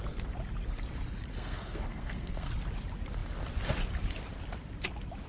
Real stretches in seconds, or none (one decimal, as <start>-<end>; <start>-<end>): 0.0-1.3; 2.5-5.3